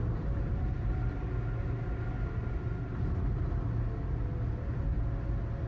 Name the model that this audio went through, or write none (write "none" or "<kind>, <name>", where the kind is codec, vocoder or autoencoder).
none